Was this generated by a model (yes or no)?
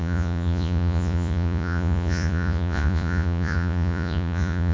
yes